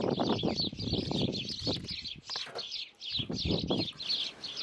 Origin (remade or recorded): recorded